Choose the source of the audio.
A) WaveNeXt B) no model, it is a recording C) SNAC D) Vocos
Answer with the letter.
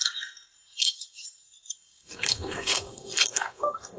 C